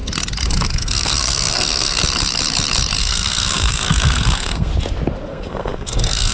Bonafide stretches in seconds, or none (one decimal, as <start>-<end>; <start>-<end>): 0.0-0.5; 2.0-3.0; 4.7-5.3